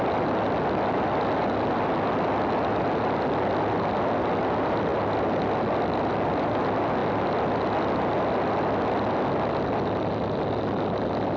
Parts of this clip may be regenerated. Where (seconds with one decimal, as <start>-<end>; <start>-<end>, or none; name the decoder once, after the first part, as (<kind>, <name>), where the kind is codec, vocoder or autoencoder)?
none